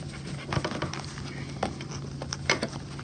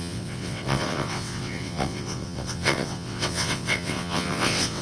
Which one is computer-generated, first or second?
second